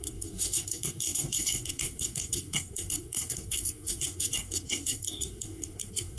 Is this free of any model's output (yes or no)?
no